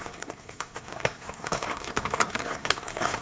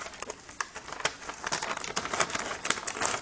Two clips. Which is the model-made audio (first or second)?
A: first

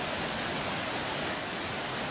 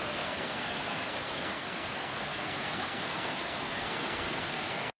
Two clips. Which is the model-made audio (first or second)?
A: second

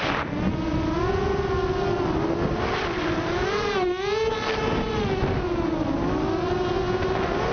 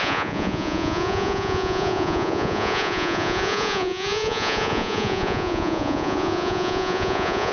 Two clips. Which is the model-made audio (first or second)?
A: second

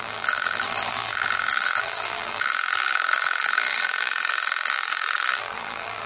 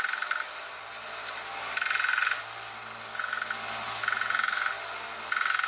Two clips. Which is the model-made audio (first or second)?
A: first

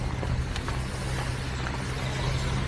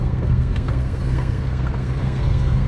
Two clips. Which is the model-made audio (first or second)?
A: second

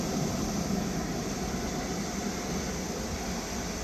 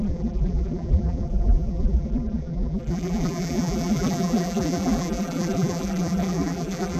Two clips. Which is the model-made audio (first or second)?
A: second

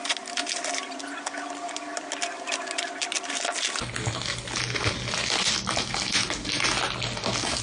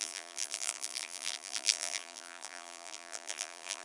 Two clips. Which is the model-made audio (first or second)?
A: second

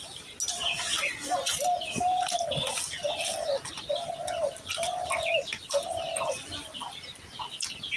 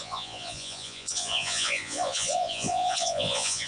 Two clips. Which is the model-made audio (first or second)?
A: second